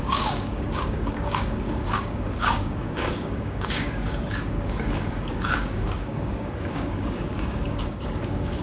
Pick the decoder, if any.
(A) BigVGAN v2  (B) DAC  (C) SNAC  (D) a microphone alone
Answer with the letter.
B